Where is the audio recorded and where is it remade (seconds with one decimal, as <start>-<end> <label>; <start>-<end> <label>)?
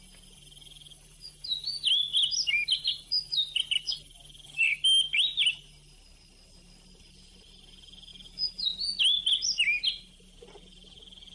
0.0-11.3 recorded